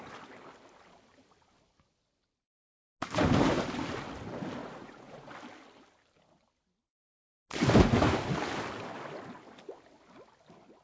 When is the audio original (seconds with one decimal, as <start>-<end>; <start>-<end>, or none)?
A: 0.0-4.6; 5.3-10.8